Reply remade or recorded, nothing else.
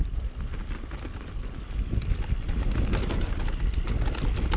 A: recorded